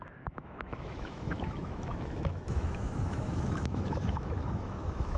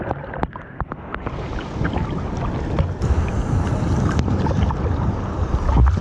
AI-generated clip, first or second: first